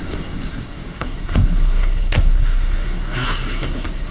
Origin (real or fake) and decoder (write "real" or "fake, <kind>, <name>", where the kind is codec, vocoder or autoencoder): fake, codec, SNAC